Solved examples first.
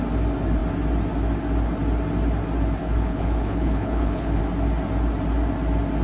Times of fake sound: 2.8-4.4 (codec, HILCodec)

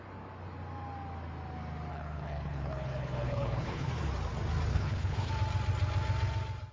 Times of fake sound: 1.9-3.9 (codec, HILCodec); 4.7-5.3

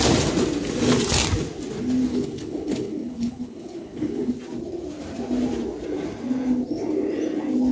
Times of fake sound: 2.1-4.3 (codec, HILCodec)

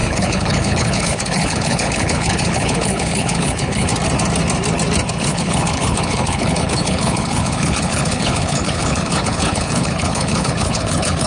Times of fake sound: 0.0-3.9 (codec, HILCodec); 5.1-11.3

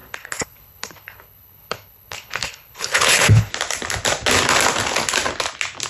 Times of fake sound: 0.0-3.5 (codec, HILCodec)

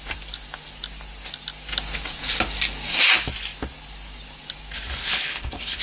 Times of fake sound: 5.0-5.8 (codec, HILCodec)

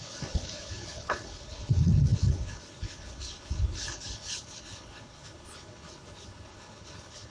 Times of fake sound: 0.0-7.3 (codec, HILCodec)